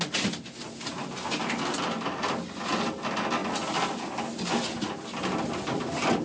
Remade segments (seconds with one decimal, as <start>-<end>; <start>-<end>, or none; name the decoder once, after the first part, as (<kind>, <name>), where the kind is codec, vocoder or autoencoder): none